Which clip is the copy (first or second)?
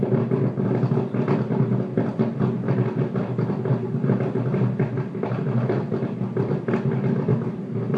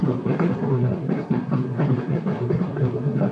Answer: second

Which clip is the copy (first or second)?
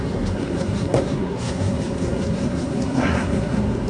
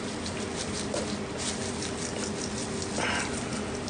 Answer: first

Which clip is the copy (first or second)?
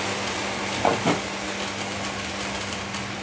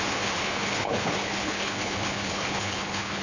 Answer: second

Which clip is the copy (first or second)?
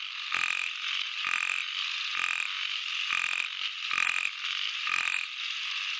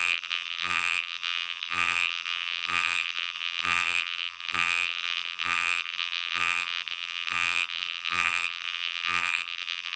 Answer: second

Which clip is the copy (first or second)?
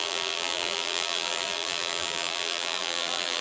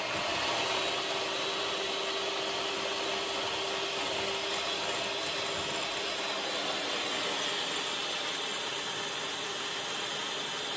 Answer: first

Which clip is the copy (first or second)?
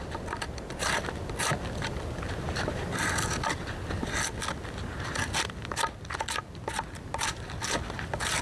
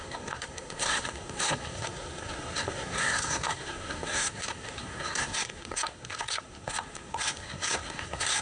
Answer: second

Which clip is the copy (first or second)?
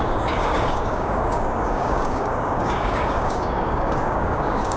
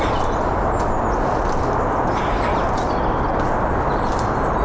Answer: first